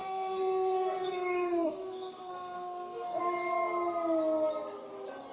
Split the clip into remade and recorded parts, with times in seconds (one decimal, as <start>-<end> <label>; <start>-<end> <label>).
0.0-3.2 remade; 3.2-5.3 recorded